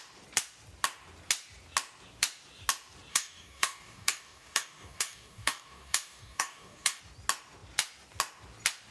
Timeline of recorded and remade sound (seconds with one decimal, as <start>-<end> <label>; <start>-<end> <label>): 0.0-3.1 recorded; 3.1-7.0 remade; 7.0-8.9 recorded